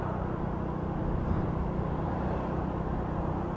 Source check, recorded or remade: recorded